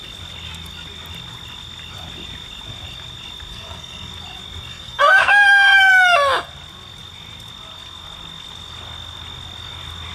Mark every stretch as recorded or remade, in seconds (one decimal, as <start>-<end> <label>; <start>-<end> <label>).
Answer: 0.0-3.5 recorded; 3.5-4.1 remade; 4.1-4.7 recorded; 4.7-5.9 remade; 5.9-10.1 recorded